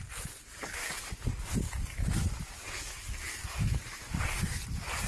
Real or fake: real